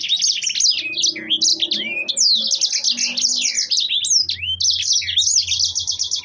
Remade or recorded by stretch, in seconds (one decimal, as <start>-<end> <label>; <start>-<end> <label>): 0.0-1.5 recorded; 1.5-2.1 remade; 2.1-6.2 recorded